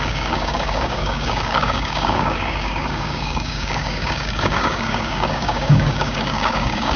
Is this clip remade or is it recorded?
remade